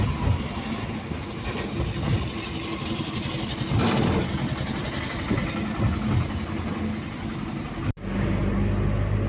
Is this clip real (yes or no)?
yes